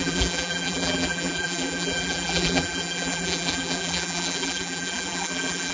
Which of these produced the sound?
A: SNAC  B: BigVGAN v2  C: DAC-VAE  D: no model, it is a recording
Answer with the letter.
B